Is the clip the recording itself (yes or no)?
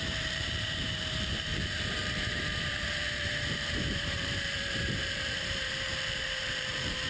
no